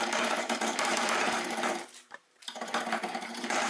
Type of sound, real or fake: fake